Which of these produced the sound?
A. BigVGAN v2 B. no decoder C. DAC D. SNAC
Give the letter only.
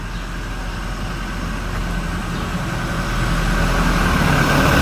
B